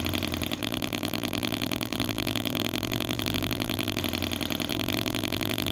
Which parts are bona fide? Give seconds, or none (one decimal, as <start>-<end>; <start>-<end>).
0.0-0.6; 4.0-4.7